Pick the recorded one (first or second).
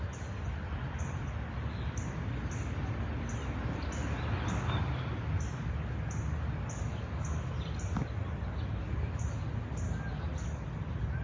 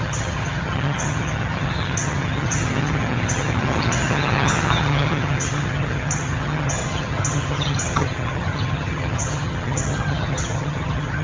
first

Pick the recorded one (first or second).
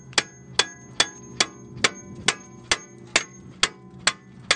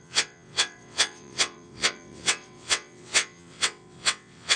first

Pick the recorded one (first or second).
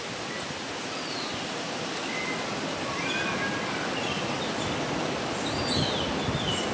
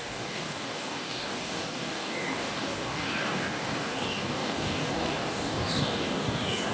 first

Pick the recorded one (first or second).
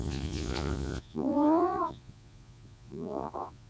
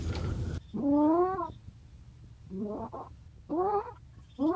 second